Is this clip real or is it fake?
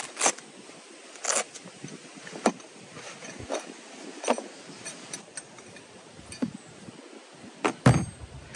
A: real